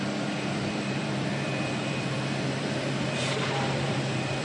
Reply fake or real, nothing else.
fake